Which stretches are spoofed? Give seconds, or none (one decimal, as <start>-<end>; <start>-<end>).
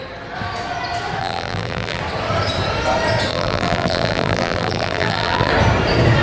1.2-2.0; 3.3-5.5